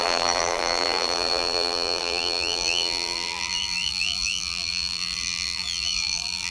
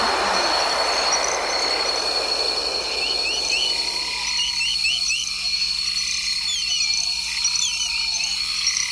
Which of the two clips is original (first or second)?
second